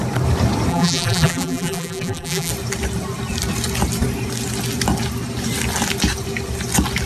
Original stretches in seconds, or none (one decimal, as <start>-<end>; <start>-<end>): 0.0-0.7; 2.5-7.1